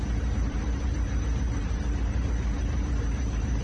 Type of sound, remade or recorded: remade